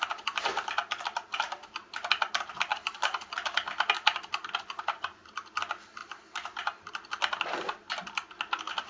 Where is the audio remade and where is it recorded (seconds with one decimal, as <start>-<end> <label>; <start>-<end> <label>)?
0.0-8.9 recorded